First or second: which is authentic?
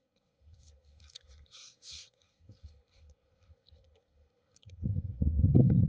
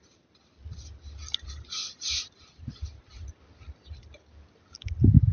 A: second